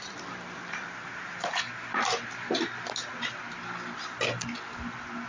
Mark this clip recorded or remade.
recorded